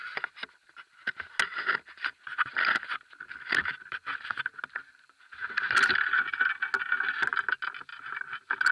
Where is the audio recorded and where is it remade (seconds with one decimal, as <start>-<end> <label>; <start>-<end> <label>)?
0.0-8.7 recorded